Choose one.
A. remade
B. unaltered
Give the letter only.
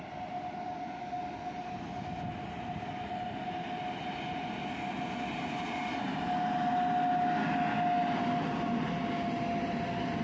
B